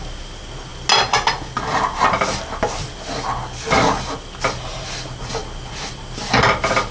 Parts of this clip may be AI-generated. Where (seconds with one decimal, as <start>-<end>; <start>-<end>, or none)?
none